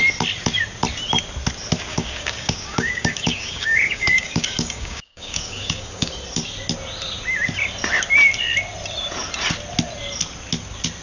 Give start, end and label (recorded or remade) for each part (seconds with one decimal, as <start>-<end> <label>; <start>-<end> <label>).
0.0-1.9 recorded; 1.9-6.1 remade; 6.1-11.0 recorded